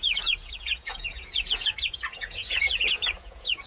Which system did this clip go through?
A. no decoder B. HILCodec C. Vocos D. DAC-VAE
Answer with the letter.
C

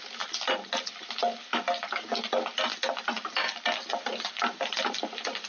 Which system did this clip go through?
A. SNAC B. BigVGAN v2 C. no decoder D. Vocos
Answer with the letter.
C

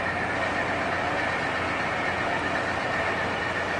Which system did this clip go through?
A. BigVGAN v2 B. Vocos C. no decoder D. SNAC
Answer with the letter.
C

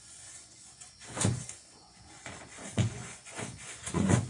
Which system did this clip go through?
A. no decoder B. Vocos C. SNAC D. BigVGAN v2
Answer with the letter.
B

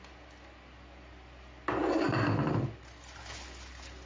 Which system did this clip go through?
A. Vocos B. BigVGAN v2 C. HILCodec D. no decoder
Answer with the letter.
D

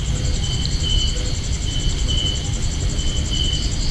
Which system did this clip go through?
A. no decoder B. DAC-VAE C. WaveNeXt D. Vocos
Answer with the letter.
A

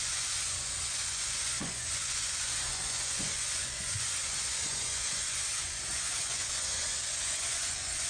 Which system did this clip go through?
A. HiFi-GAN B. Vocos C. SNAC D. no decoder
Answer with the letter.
B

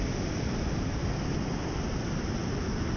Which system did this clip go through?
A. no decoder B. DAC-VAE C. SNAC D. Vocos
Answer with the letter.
A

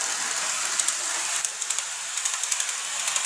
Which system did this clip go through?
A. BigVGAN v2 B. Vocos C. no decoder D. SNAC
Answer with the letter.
C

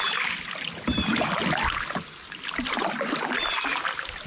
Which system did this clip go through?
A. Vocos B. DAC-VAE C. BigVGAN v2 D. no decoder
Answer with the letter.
D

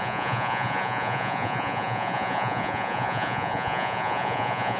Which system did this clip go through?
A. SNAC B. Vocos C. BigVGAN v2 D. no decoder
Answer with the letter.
B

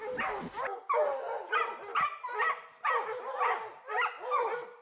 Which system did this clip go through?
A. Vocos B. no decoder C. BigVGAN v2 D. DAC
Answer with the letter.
B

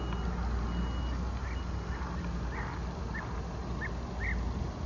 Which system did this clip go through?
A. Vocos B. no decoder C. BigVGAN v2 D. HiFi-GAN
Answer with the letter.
B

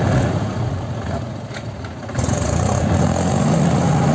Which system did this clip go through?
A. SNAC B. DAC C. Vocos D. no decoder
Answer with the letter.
C